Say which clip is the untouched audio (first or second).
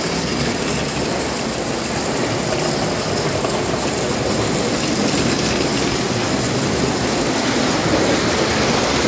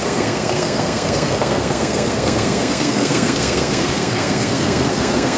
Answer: first